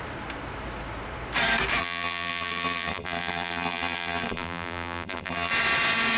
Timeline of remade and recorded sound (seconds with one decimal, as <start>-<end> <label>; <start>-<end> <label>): 0.0-1.8 recorded; 1.8-5.5 remade; 5.5-6.2 recorded